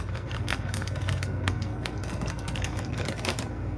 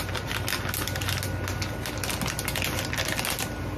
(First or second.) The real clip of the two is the second